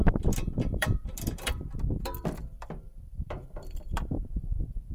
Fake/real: fake